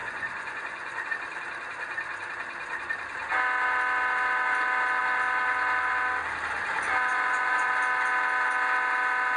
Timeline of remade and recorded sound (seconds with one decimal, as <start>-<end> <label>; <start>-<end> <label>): 0.0-1.1 remade; 1.1-7.1 recorded; 7.1-7.7 remade; 7.7-9.4 recorded